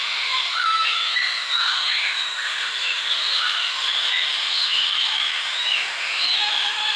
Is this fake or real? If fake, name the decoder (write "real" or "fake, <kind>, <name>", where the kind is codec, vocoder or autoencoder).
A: fake, autoencoder, DAC-VAE